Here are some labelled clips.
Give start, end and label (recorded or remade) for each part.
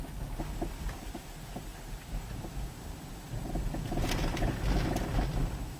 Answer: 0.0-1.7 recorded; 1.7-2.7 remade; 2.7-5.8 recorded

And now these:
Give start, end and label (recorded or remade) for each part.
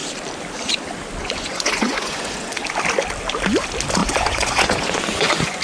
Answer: 0.0-1.2 recorded; 1.2-2.5 remade; 2.5-4.0 recorded; 4.0-5.6 remade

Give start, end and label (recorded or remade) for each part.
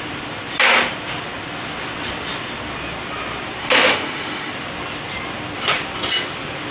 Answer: 0.0-3.6 recorded; 3.6-4.5 remade; 4.5-6.7 recorded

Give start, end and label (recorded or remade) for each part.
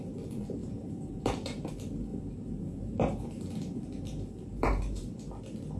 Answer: 0.0-0.6 recorded; 0.6-1.7 remade; 1.7-2.1 recorded; 2.1-5.3 remade; 5.3-5.8 recorded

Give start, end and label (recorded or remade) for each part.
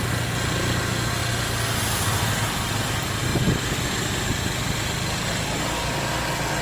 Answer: 0.0-6.6 recorded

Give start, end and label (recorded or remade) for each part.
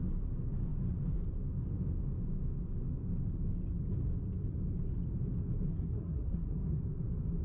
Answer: 0.0-5.7 recorded; 5.7-6.8 remade; 6.8-7.4 recorded